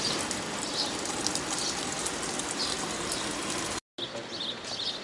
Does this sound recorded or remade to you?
recorded